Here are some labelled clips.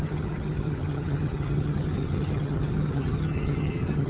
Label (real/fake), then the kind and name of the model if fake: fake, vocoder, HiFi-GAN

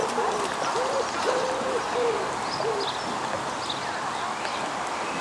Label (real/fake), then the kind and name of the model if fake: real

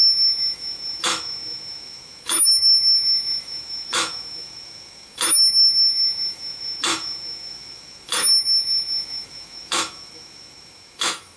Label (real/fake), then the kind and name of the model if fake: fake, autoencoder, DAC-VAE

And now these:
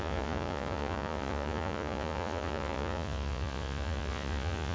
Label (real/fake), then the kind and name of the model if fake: fake, vocoder, Vocos